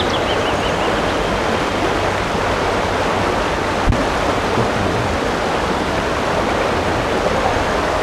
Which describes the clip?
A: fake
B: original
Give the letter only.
B